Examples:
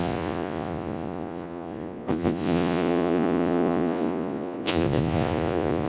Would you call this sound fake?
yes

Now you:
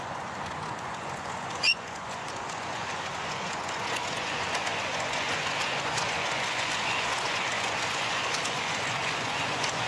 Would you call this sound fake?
yes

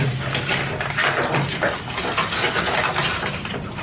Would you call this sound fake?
no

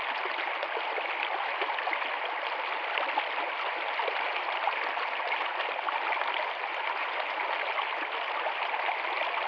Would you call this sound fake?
no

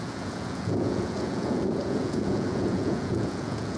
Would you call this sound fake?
yes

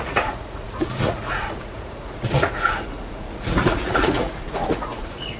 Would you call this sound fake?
yes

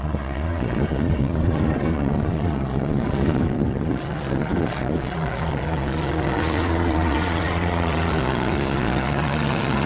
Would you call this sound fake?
yes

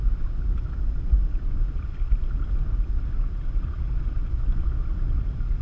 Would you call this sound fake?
no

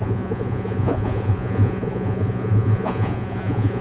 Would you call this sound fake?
yes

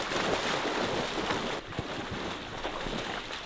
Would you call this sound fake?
no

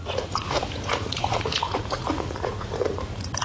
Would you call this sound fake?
yes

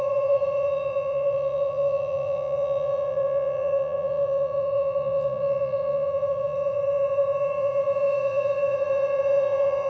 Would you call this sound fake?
yes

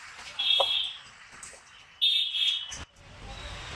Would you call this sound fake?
no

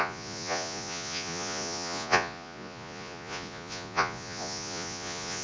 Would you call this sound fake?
yes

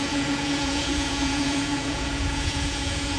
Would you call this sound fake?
yes